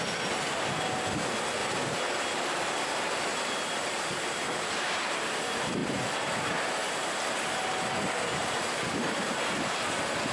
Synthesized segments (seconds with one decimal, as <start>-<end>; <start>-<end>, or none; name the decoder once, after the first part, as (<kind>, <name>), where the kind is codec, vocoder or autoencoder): 1.6-2.4 (vocoder, BigVGAN v2); 3.3-5.0; 5.8-9.6